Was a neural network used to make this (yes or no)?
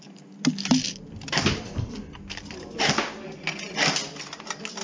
no